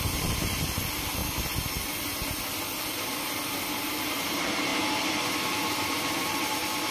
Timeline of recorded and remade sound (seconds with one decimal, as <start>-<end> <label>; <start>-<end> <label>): 0.0-1.2 remade; 1.2-3.7 recorded; 3.7-4.7 remade; 4.7-5.4 recorded; 5.4-6.9 remade